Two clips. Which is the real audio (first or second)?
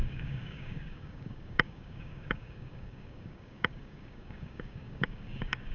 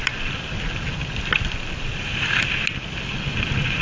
second